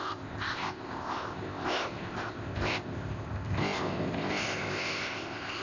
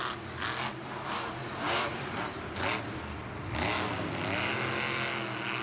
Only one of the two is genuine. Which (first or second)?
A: second